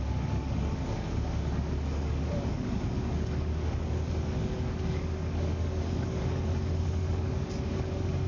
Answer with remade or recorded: remade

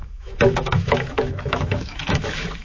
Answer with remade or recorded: remade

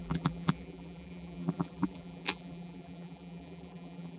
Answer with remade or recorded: remade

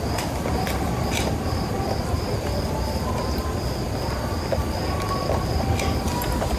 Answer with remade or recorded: recorded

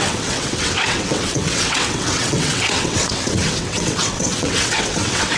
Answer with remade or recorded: remade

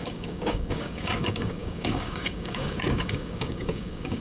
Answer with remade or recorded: remade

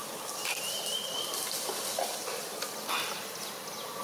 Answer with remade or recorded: recorded